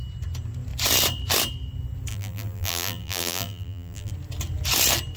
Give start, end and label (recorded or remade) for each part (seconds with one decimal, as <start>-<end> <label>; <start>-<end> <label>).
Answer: 0.0-2.1 recorded; 2.1-4.1 remade; 4.1-5.2 recorded